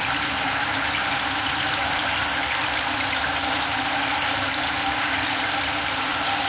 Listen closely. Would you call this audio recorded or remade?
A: recorded